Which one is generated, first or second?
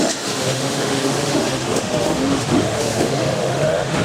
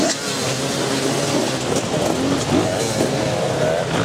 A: first